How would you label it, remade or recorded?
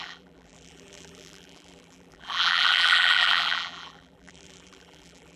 remade